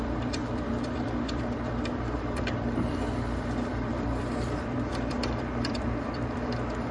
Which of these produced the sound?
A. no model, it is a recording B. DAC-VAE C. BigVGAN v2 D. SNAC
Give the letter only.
C